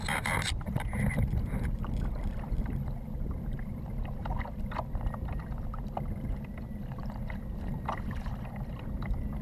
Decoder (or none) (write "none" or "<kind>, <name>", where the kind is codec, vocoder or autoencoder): vocoder, BigVGAN v2